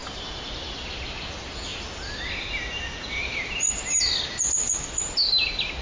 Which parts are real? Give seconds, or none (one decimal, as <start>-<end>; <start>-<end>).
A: 0.0-5.8